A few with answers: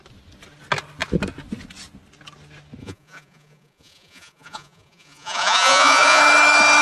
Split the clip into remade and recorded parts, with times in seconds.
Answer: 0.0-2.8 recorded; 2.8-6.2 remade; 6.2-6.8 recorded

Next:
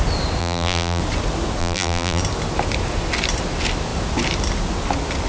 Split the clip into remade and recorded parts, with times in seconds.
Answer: 0.0-0.4 recorded; 0.4-1.0 remade; 1.0-1.6 recorded; 1.6-2.2 remade; 2.2-5.3 recorded

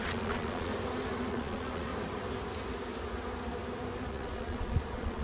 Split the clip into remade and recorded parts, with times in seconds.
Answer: 0.0-0.7 remade; 0.7-1.3 recorded; 1.3-1.9 remade; 1.9-4.1 recorded; 4.1-5.2 remade

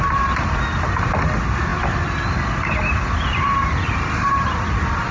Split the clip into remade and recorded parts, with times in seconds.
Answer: 0.0-5.1 recorded

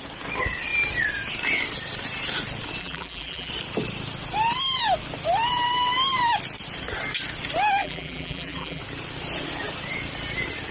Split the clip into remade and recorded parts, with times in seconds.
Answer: 0.0-2.8 recorded; 2.8-3.5 remade; 3.5-7.8 recorded; 7.8-8.8 remade; 8.8-10.7 recorded

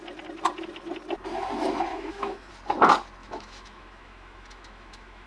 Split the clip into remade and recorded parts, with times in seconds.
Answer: 0.0-1.9 recorded; 1.9-2.5 remade; 2.5-3.2 recorded; 3.2-5.3 remade